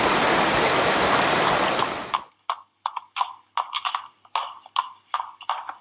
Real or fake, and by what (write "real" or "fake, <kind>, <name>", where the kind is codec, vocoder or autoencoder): real